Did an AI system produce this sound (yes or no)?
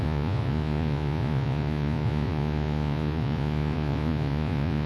yes